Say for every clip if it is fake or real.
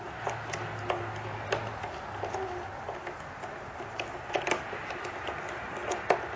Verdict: real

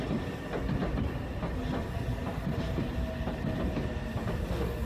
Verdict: real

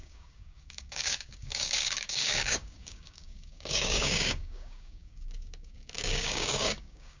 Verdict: fake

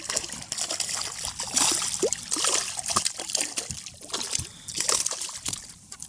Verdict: real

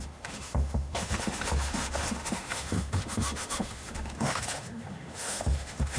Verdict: fake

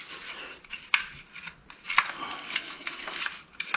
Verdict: real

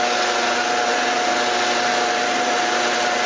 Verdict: real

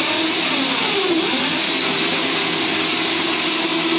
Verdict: real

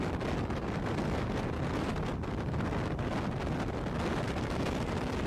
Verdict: real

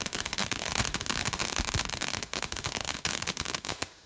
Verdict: fake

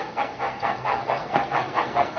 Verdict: fake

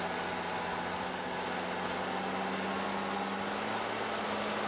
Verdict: real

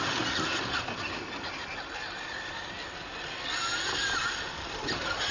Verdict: real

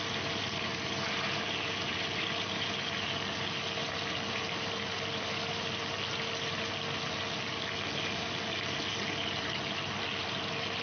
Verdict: real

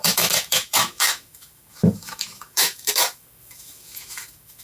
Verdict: fake